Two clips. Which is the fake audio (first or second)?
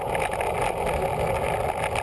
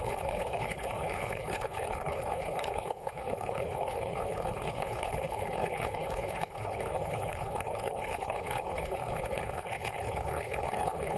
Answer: second